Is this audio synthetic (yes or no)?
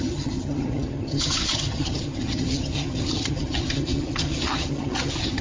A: yes